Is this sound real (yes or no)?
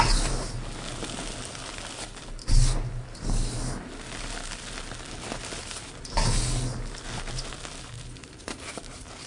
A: yes